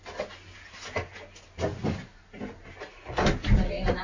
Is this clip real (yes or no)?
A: yes